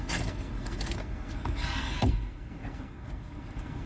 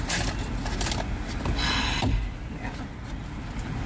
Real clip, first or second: second